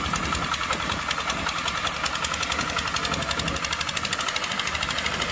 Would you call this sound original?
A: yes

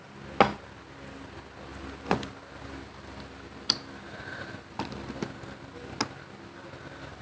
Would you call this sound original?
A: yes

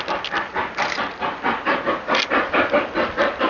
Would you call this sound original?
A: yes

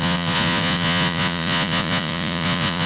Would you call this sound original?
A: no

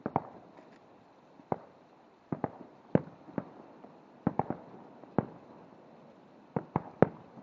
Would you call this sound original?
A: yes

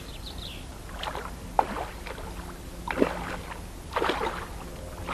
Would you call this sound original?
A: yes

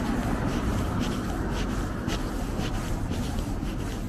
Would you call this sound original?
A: yes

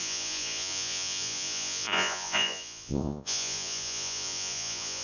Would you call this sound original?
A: no